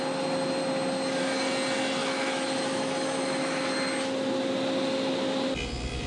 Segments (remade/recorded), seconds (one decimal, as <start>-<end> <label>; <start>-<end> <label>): 0.0-2.0 recorded; 2.0-3.6 remade; 3.6-6.1 recorded